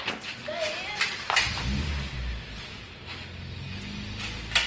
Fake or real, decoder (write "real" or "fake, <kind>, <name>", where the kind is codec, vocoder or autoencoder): real